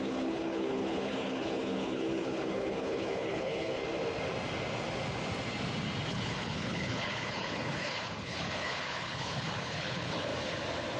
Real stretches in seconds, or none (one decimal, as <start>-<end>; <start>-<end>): 3.8-6.1; 10.3-11.0